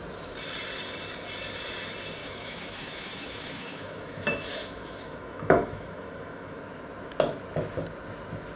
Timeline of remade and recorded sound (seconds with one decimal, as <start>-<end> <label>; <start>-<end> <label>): 0.0-2.2 recorded; 2.2-6.6 remade; 6.6-8.6 recorded